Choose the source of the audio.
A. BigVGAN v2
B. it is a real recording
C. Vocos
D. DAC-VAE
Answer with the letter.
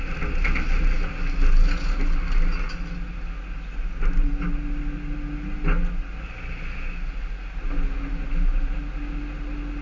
B